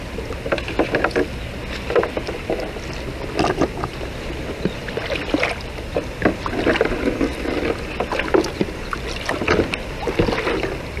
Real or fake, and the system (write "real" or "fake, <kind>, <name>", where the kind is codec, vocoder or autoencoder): real